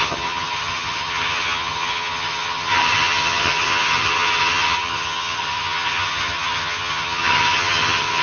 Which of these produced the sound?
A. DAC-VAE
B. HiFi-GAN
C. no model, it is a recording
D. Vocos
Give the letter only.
B